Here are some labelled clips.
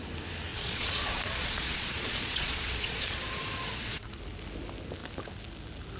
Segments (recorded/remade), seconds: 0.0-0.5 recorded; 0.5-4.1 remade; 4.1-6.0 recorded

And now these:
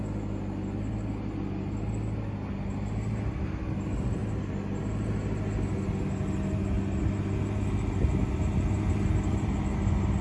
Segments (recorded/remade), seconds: 0.0-10.2 recorded

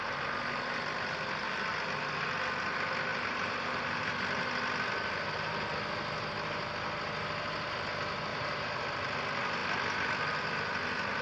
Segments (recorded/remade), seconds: 0.0-3.1 recorded; 3.1-4.1 remade; 4.1-8.3 recorded; 8.3-8.8 remade; 8.8-11.2 recorded